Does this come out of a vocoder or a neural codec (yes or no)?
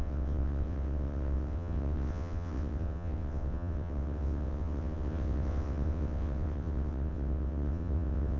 yes